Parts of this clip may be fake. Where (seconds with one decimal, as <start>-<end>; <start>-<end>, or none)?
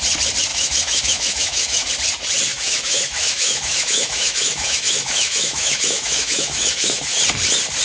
0.5-1.9; 2.5-7.2